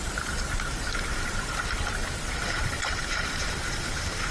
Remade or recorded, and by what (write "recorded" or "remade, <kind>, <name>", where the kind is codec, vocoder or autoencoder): remade, vocoder, BigVGAN v2